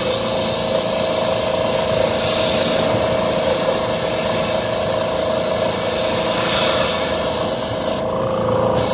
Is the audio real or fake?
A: real